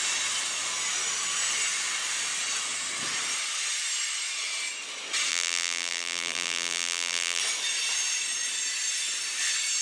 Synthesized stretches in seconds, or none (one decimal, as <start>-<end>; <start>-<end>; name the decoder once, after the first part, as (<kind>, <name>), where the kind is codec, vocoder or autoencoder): 5.3-7.4 (vocoder, BigVGAN v2)